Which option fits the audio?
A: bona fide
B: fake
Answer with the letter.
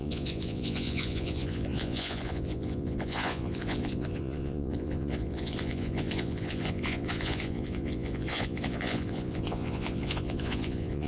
B